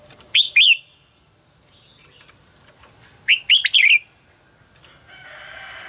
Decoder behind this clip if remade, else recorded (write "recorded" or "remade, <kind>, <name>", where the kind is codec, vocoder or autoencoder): recorded